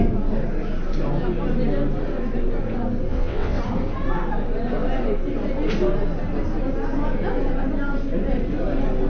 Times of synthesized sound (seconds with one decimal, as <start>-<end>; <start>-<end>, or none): 3.1-3.6